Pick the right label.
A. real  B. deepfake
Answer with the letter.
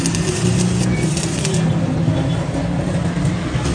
A